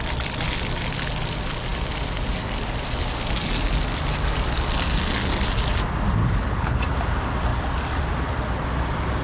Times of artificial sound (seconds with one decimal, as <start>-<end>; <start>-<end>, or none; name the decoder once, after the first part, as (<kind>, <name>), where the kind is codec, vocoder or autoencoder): 6.2-6.8 (codec, HILCodec)